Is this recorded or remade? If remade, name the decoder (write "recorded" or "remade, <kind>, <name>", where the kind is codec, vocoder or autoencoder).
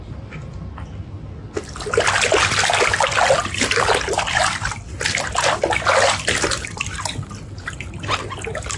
recorded